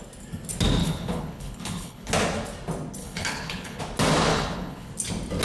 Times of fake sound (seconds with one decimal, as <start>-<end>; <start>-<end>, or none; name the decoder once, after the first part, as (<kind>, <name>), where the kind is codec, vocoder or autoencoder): 0.8-2.1 (codec, HILCodec); 3.0-3.8; 4.3-4.9